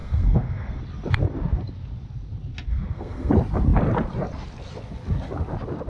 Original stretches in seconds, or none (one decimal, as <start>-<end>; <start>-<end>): 0.8-2.7; 3.3-5.9